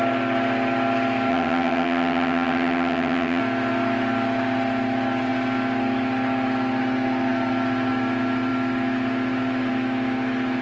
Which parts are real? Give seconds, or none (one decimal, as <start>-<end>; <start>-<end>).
0.0-1.3; 3.4-10.6